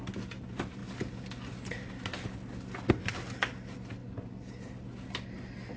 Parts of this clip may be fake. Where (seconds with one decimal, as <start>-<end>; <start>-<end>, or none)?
none